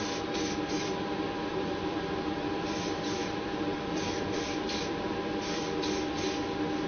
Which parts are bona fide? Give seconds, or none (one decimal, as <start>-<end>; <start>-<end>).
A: 0.0-1.5; 5.6-6.9